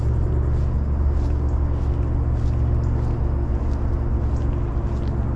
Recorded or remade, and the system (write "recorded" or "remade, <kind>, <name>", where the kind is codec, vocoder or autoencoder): recorded